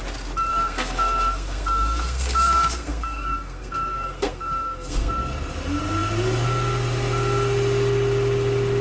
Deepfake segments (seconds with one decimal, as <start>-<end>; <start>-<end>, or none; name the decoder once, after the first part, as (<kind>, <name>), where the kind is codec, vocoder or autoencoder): 0.5-5.1 (codec, SNAC)